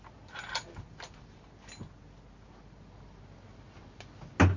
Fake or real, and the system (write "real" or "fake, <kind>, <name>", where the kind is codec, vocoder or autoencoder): real